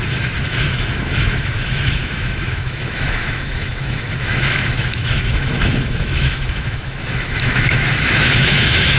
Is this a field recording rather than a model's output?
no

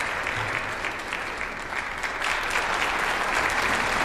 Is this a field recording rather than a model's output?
yes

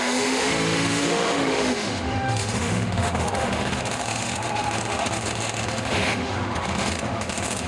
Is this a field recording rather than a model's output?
no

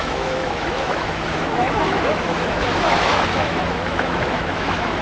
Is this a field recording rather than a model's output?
no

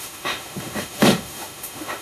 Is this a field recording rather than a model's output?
no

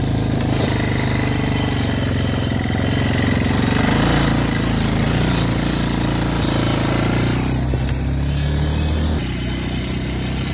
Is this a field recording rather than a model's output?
yes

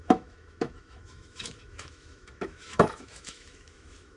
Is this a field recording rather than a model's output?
no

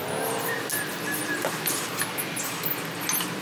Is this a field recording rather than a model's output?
yes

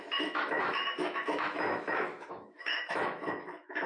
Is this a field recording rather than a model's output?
no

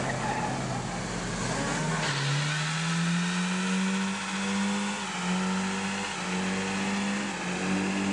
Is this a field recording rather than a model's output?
yes